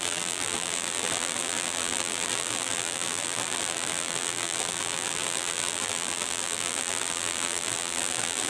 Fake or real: fake